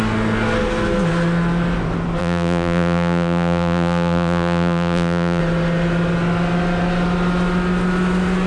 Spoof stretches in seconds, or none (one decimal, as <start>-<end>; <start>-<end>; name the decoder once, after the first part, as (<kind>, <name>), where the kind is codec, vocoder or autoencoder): 2.2-5.4 (vocoder, BigVGAN v2)